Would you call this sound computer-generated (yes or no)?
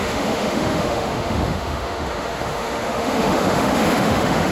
yes